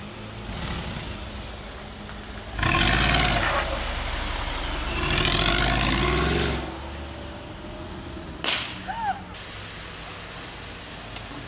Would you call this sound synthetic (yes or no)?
no